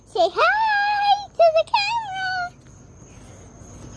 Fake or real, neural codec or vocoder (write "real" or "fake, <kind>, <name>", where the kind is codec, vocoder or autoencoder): real